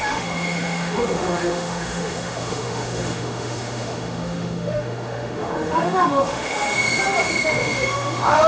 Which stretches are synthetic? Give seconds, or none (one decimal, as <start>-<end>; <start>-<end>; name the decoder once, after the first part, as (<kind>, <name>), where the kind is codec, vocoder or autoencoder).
0.0-8.5 (autoencoder, DAC-VAE)